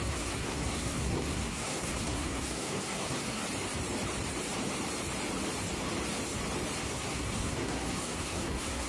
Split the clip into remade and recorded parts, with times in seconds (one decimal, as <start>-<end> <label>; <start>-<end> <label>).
0.0-3.4 remade; 3.4-6.8 recorded; 6.8-8.9 remade